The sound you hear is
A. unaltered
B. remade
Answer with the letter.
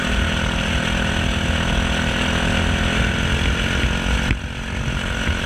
A